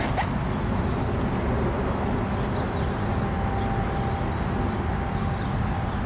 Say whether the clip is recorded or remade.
recorded